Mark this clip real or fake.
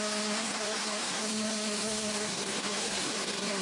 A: fake